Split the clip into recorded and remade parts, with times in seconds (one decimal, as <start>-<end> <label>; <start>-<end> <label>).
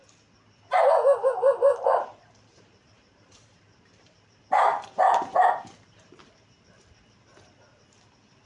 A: 0.0-1.7 recorded; 1.7-6.2 remade; 6.2-8.5 recorded